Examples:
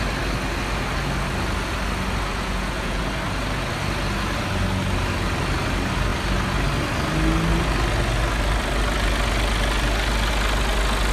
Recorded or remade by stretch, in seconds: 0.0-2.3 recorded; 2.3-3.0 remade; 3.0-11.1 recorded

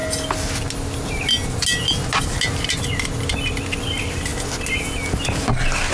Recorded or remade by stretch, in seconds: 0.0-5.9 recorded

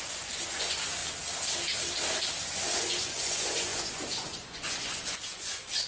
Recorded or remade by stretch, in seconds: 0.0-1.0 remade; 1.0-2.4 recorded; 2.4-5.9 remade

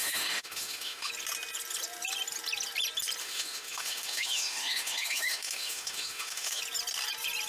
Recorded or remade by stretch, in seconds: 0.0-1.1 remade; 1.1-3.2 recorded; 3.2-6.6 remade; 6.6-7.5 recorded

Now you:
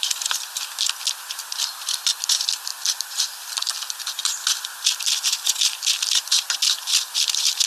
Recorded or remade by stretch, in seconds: 0.0-7.7 recorded

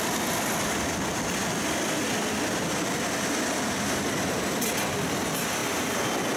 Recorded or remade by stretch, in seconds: 0.0-5.6 recorded; 5.6-6.4 remade

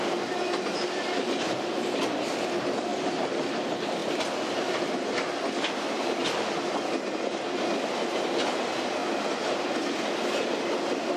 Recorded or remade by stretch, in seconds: 0.0-11.2 recorded